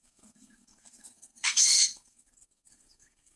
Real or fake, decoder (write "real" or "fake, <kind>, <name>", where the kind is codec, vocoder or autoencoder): fake, codec, SNAC